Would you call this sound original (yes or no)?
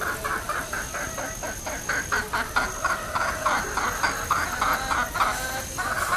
yes